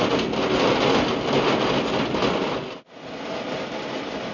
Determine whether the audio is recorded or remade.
recorded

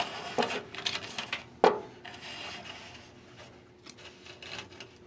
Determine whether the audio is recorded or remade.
recorded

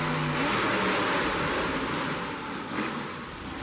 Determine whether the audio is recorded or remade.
recorded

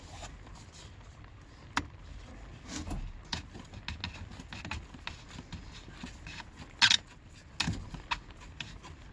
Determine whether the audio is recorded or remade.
recorded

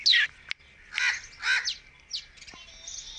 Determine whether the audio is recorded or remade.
recorded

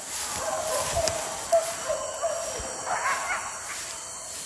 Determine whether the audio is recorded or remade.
recorded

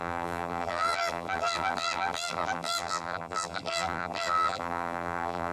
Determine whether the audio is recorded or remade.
remade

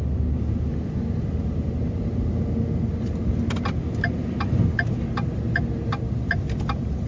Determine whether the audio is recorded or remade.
recorded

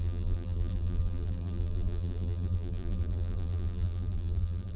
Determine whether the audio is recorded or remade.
remade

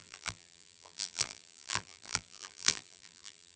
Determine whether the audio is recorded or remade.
remade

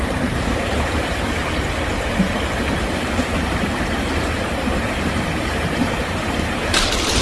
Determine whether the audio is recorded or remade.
remade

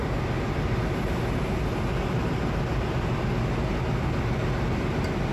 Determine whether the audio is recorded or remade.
recorded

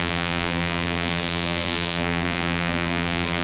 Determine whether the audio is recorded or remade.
remade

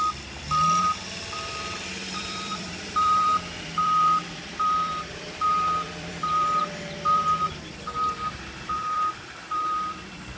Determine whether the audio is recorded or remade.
remade